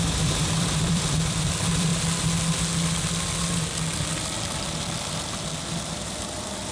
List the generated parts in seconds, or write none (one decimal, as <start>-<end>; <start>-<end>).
0.0-1.9; 5.9-6.7